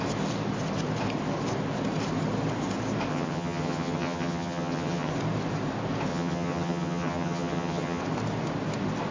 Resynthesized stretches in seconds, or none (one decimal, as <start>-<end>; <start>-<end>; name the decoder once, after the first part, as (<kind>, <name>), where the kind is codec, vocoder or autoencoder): 3.1-5.1 (vocoder, HiFi-GAN); 6.1-8.0